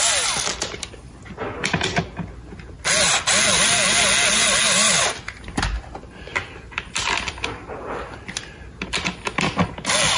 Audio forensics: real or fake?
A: real